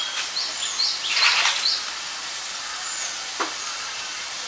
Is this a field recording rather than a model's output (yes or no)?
yes